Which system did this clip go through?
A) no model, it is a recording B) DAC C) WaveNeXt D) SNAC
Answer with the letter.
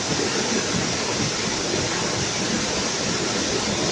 A